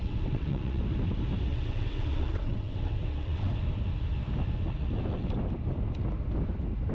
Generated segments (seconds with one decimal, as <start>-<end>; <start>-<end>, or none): 0.0-0.8; 1.5-3.5